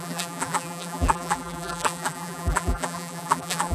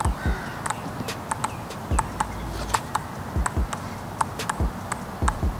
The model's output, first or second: first